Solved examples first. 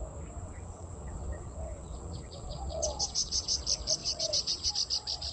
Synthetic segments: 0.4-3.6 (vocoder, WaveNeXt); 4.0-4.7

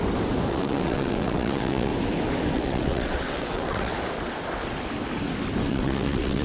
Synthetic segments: 0.5-1.9 (vocoder, WaveNeXt); 2.5-3.9; 5.7-6.4